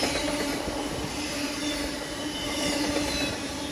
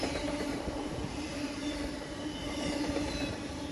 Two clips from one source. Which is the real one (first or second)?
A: first